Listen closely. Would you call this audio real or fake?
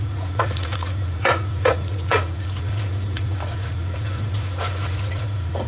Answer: fake